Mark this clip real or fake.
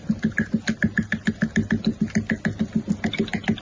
real